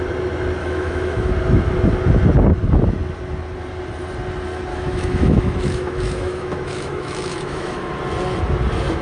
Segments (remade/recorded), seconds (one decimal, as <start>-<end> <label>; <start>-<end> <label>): 0.0-0.6 recorded; 0.6-1.3 remade; 1.3-4.7 recorded; 4.7-7.9 remade; 7.9-9.0 recorded